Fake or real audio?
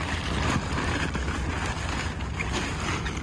real